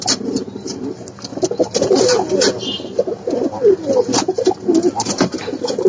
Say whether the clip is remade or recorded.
recorded